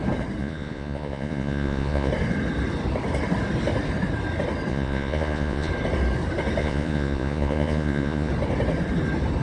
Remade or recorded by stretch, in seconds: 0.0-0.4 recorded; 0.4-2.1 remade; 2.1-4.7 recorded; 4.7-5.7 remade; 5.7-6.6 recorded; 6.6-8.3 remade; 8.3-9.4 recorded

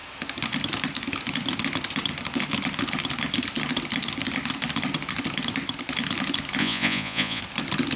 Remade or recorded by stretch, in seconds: 0.0-6.6 recorded; 6.6-7.4 remade; 7.4-8.0 recorded

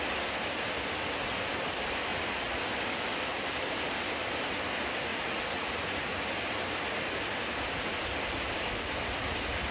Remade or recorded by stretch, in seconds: 0.0-2.1 recorded; 2.1-2.6 remade; 2.6-5.1 recorded; 5.1-5.7 remade; 5.7-9.7 recorded

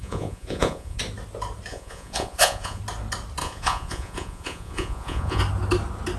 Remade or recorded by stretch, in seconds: 0.0-1.0 remade; 1.0-1.7 recorded; 1.7-2.8 remade; 2.8-3.4 recorded; 3.4-5.4 remade; 5.4-6.2 recorded

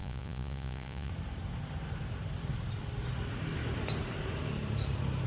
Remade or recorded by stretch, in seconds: 0.0-1.1 remade; 1.1-5.3 recorded

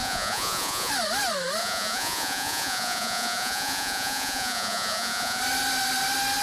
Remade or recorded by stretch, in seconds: 0.0-0.9 remade; 0.9-1.6 recorded; 1.6-5.4 remade; 5.4-6.4 recorded

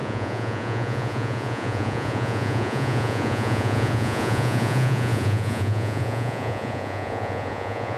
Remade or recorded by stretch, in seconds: 0.0-8.0 remade

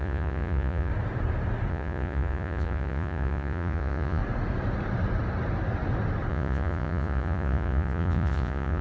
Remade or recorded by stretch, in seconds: 0.0-0.9 remade; 0.9-1.7 recorded; 1.7-4.2 remade; 4.2-6.3 recorded; 6.3-8.8 remade